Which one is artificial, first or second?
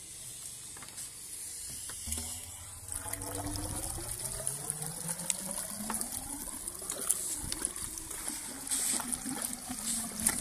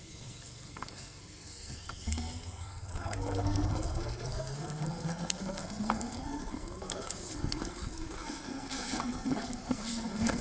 second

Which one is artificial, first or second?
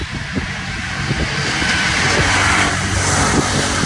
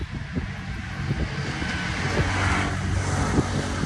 first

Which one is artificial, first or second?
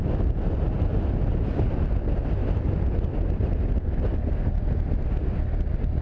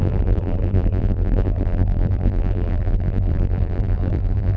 second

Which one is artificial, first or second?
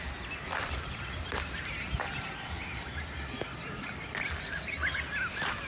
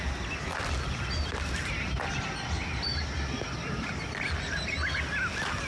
first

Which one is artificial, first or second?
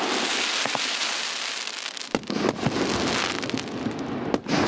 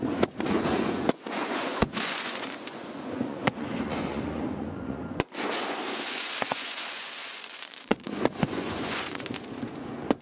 second